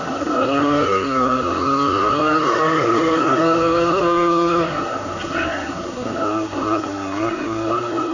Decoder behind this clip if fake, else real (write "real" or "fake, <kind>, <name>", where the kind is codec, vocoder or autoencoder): fake, codec, SNAC